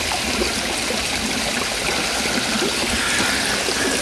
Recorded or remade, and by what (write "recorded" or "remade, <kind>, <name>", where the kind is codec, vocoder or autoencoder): recorded